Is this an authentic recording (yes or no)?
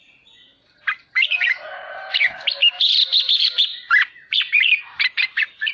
no